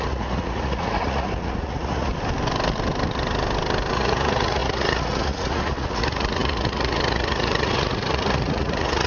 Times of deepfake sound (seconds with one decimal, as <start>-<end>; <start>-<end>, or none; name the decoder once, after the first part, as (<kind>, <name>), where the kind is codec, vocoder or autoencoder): 0.0-2.1 (vocoder, Vocos); 3.9-9.1